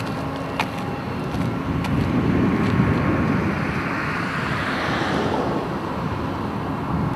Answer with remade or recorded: recorded